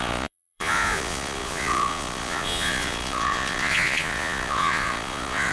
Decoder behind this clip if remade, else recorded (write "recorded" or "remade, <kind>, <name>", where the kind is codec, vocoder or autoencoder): remade, vocoder, Vocos